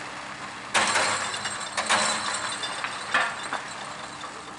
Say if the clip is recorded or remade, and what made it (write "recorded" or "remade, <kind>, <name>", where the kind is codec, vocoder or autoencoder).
recorded